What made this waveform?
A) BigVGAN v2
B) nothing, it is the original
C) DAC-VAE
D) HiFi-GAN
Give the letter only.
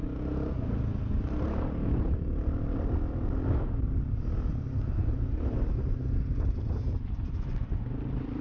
B